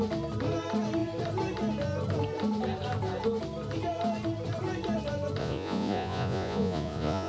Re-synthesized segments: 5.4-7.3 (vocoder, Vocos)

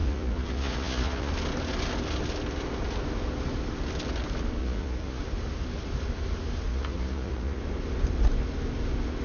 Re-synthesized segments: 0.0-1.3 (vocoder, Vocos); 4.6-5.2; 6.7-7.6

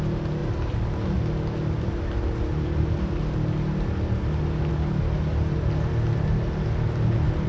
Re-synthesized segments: none